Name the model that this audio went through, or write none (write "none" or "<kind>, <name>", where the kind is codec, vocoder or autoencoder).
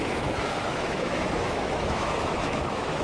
autoencoder, DAC-VAE